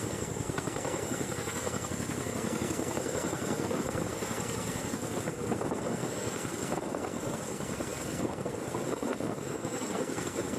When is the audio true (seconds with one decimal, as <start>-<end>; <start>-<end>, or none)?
none